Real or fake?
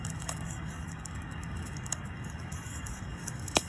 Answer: fake